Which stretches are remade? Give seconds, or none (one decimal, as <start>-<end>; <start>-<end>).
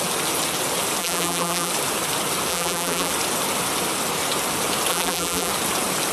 1.0-1.7; 2.5-3.1; 4.9-5.5